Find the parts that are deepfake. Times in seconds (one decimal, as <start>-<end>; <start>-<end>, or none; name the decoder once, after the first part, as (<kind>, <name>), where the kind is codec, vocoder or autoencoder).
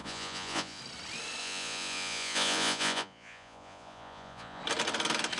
0.0-0.8 (vocoder, Vocos); 1.4-4.6